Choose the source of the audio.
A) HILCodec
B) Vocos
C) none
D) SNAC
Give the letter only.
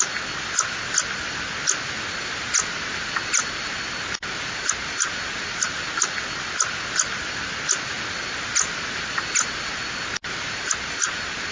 C